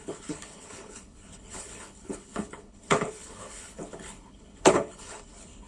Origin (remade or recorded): remade